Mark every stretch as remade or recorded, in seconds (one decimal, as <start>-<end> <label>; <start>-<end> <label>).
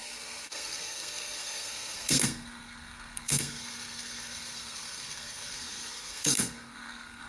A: 0.0-7.3 remade